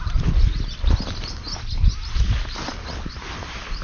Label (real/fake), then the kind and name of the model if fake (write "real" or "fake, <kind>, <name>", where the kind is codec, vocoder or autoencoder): real